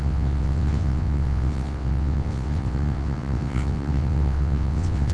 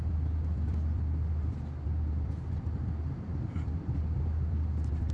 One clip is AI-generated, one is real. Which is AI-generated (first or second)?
first